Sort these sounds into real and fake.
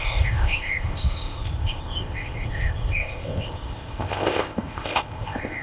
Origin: fake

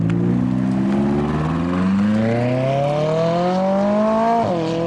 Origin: real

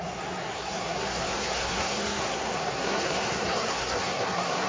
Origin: fake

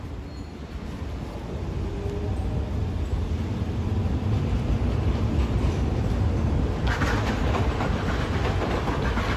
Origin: real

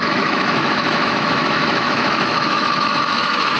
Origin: fake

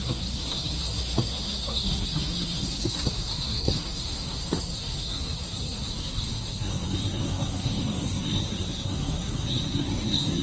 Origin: fake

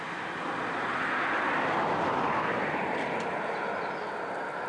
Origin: real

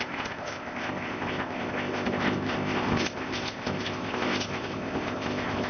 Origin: fake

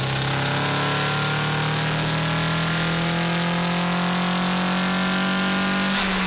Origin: real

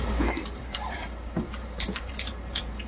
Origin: fake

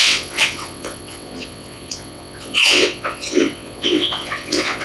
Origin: fake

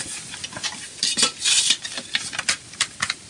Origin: real